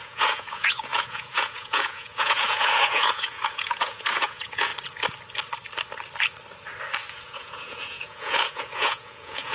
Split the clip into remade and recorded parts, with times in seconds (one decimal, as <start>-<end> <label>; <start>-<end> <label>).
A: 0.0-4.7 remade; 4.7-7.1 recorded; 7.1-9.5 remade

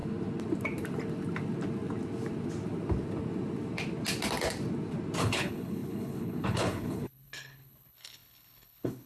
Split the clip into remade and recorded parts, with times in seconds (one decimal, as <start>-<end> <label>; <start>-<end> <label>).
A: 0.0-5.2 recorded; 5.2-9.1 remade

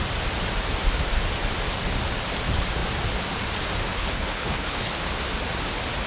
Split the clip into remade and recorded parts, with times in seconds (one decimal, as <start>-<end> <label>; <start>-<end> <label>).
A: 0.0-3.9 recorded; 3.9-5.0 remade; 5.0-6.1 recorded

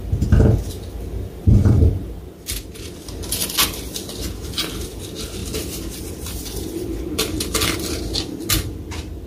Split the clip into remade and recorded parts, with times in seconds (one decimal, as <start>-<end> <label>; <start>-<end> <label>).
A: 0.0-9.3 recorded

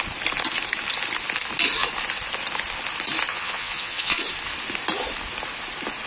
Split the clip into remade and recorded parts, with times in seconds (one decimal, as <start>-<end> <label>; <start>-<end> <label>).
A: 0.0-3.3 recorded; 3.3-4.2 remade; 4.2-6.1 recorded